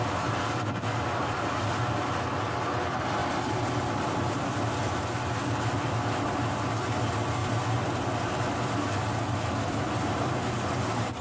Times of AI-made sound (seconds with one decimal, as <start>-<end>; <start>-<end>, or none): 3.2-6.2; 7.4-10.3